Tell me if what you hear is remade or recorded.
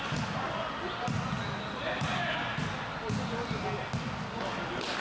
recorded